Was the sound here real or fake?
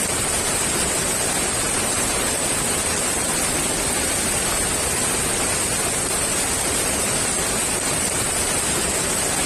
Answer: real